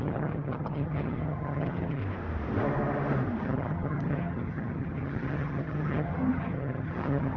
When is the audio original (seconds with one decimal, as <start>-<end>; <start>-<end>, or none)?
2.0-3.4